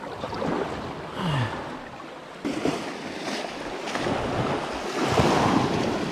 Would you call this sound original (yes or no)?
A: yes